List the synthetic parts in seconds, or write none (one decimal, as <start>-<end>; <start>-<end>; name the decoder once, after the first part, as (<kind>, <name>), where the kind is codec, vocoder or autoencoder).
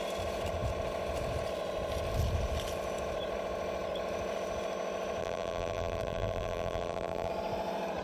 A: 5.2-7.3 (vocoder, BigVGAN v2)